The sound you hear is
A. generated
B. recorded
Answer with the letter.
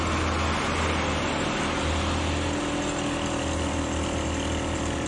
B